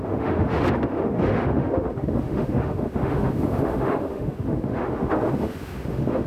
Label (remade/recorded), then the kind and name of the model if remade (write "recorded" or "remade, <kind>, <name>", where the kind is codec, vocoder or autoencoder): remade, autoencoder, DAC-VAE